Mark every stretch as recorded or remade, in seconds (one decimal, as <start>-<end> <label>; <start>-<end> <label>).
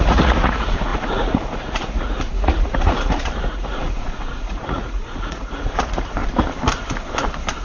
0.0-6.2 remade; 6.2-7.6 recorded